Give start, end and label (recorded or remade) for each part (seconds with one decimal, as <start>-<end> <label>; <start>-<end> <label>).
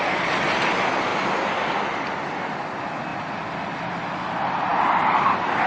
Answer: 0.0-5.7 recorded